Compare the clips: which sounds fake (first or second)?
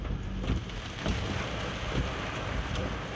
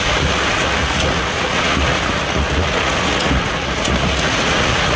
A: second